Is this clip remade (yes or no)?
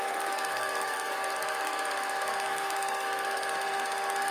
yes